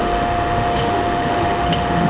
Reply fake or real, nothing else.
fake